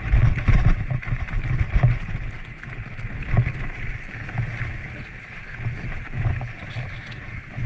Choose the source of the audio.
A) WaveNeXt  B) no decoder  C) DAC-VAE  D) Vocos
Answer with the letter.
B